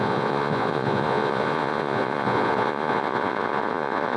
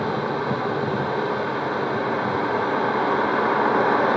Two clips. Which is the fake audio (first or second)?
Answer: first